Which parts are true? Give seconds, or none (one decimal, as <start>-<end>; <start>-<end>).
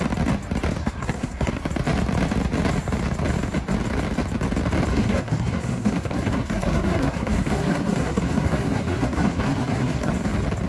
0.0-0.8; 1.6-4.9; 10.1-10.7